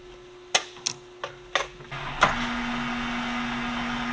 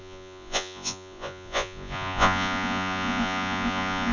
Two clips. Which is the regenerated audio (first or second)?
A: second